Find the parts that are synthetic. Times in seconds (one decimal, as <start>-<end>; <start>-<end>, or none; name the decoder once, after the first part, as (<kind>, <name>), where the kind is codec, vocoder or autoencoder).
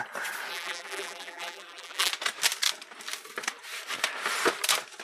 0.5-2.1 (vocoder, BigVGAN v2)